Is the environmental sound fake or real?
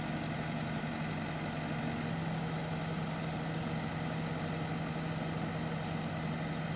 real